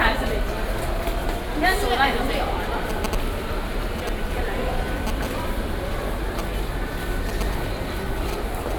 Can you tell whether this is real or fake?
real